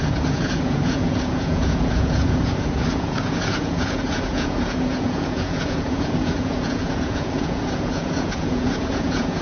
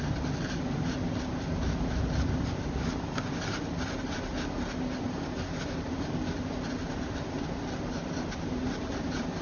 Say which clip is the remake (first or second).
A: first